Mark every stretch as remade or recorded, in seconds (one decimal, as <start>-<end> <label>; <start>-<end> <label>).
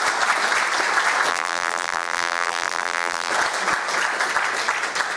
0.0-1.3 recorded; 1.3-3.3 remade; 3.3-5.2 recorded